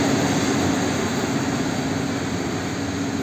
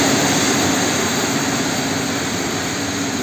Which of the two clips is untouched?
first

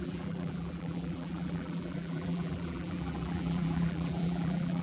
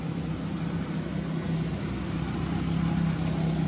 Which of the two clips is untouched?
second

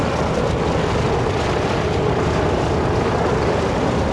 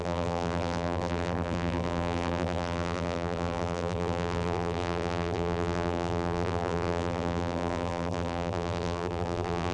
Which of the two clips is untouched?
first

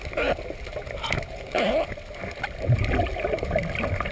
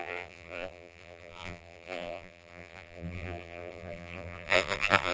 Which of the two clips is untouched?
first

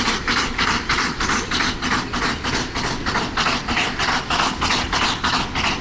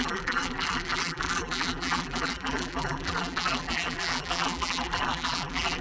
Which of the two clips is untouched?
first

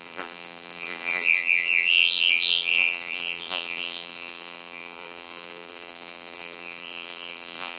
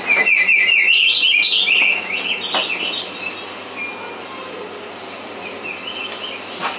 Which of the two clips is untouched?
second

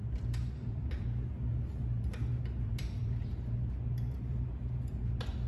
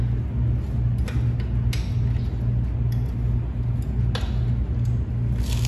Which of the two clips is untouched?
second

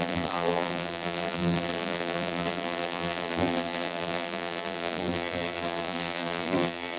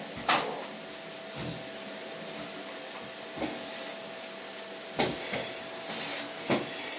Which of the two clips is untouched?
second